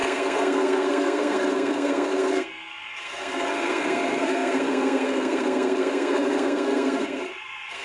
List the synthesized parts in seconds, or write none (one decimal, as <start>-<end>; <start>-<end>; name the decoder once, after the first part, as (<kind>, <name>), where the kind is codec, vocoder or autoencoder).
0.0-7.8 (codec, SNAC)